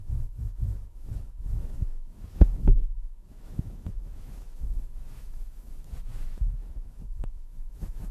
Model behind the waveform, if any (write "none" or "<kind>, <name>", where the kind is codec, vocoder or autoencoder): autoencoder, DAC-VAE